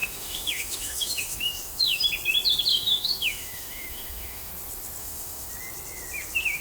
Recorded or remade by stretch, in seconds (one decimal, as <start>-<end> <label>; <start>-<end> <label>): 0.0-2.0 remade; 2.0-2.7 recorded; 2.7-4.5 remade; 4.5-5.0 recorded; 5.0-5.5 remade; 5.5-6.6 recorded

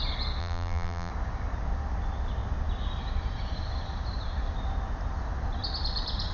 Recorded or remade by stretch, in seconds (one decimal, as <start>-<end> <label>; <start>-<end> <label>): 0.0-0.4 recorded; 0.4-1.1 remade; 1.1-6.3 recorded

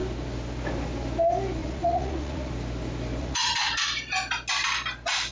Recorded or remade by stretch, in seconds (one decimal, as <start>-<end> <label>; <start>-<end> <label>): 0.0-1.6 recorded; 1.6-2.5 remade; 2.5-3.2 recorded; 3.2-3.7 remade; 3.7-5.3 recorded

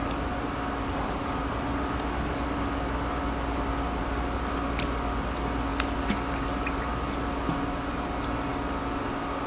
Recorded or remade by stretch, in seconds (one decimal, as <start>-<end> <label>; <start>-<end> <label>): 0.0-9.5 recorded

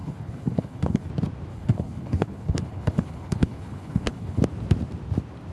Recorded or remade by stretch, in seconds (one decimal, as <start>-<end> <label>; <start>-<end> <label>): 0.0-1.1 remade; 1.1-1.5 recorded; 1.5-4.4 remade; 4.4-5.5 recorded

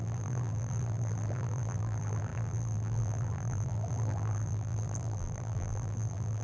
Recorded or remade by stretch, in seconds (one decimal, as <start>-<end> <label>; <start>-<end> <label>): 0.0-6.4 remade

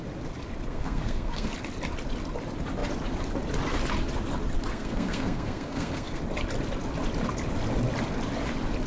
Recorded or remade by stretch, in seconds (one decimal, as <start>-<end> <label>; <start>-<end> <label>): 0.0-0.7 recorded; 0.7-1.5 remade; 1.5-4.7 recorded; 4.7-6.2 remade; 6.2-8.9 recorded